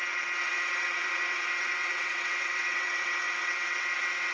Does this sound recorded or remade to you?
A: remade